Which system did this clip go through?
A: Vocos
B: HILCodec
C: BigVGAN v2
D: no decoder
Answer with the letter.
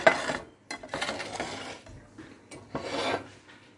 D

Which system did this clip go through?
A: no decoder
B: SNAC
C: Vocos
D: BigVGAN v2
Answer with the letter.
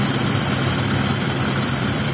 D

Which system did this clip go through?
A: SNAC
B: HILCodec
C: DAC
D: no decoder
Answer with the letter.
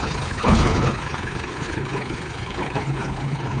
B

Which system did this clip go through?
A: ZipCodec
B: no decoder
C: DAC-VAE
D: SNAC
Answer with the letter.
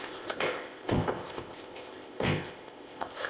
A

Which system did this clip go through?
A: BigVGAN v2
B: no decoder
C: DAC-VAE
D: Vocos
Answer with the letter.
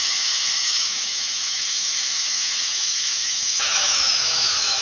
C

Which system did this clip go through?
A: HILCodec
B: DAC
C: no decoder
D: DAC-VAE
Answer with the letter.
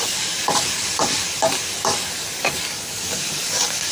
B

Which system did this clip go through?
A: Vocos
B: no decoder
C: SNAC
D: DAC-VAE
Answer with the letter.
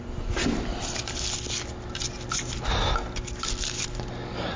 B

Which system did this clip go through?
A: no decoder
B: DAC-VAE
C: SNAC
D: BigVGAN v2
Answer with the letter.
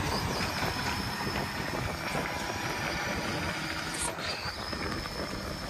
A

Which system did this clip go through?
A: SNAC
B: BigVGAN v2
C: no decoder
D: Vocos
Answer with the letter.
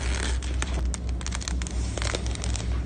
C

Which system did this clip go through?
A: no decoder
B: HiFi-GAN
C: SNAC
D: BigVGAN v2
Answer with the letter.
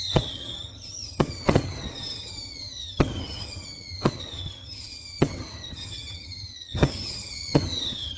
B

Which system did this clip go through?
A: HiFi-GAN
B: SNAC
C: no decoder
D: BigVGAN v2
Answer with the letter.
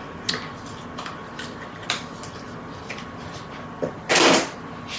C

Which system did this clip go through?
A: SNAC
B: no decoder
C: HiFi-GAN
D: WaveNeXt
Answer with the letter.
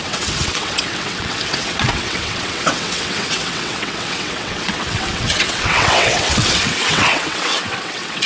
D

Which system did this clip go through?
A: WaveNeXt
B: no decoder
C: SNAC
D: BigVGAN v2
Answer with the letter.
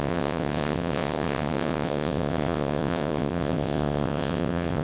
A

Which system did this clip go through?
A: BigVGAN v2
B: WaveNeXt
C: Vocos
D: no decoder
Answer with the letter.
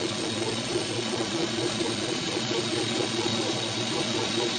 C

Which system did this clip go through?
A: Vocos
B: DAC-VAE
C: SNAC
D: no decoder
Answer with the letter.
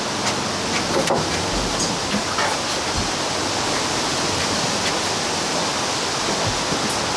D